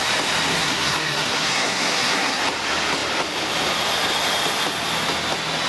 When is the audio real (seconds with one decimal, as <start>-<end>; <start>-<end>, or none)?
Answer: 0.0-0.5; 2.4-5.7